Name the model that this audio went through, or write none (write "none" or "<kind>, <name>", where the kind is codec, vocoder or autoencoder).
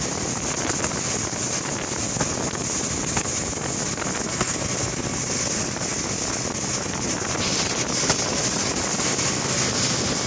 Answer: none